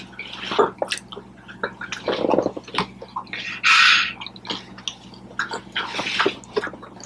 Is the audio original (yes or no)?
yes